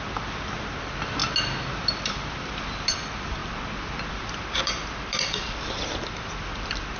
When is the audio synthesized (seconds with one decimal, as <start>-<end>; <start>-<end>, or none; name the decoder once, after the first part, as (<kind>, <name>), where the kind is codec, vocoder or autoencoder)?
0.0-3.4 (vocoder, BigVGAN v2); 4.1-7.0